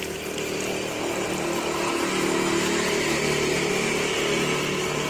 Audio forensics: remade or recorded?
recorded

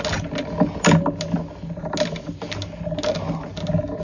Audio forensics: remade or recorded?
recorded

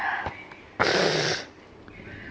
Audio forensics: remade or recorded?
recorded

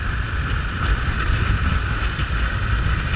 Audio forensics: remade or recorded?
recorded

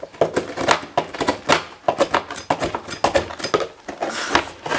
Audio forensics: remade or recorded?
recorded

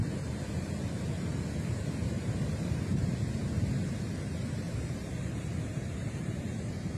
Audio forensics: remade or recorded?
remade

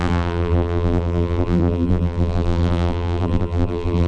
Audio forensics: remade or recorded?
remade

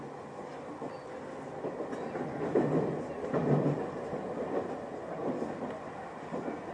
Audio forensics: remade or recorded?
recorded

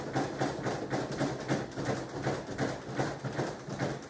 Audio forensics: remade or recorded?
recorded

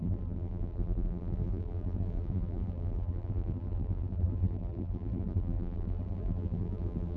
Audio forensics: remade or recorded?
remade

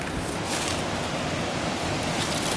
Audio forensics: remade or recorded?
recorded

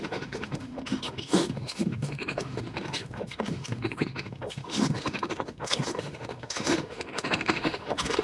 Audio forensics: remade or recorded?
remade